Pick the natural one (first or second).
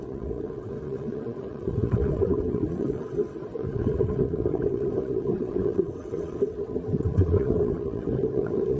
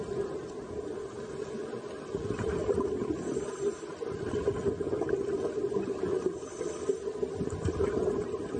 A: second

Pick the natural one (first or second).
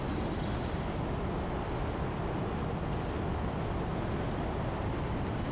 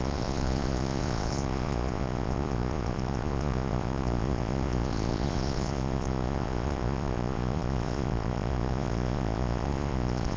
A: first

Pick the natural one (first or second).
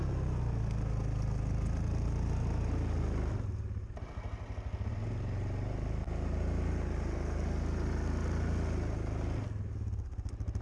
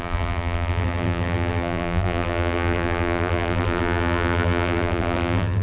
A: first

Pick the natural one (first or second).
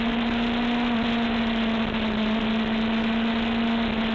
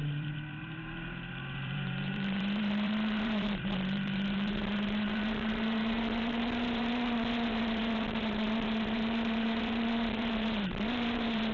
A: first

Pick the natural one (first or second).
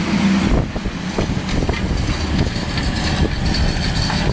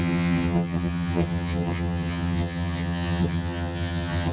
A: first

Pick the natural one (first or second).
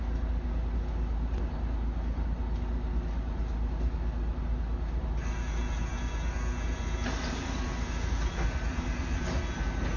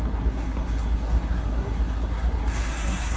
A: first